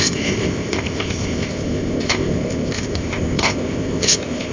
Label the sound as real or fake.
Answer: fake